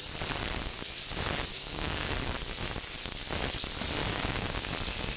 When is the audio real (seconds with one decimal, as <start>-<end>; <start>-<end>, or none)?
0.0-1.5; 2.1-4.0; 4.7-5.2